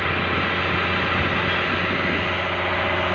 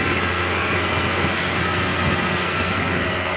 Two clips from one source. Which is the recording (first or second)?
first